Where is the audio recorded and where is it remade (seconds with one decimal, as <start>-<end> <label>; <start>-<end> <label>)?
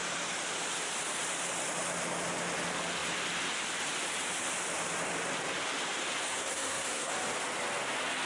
0.0-6.3 recorded; 6.3-7.1 remade; 7.1-8.3 recorded